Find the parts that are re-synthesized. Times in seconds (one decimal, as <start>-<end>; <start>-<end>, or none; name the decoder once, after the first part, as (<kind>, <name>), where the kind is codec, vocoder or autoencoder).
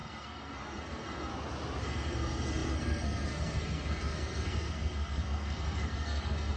0.0-1.3 (codec, SNAC); 1.8-6.6